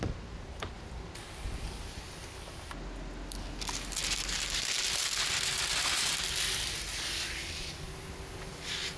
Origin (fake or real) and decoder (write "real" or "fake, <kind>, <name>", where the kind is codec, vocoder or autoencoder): real